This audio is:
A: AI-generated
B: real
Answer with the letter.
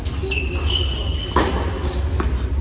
B